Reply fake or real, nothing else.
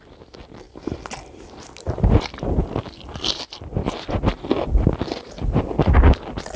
real